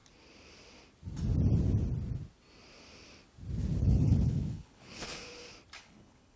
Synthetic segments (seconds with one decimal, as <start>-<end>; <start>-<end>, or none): 3.8-5.2; 5.8-6.4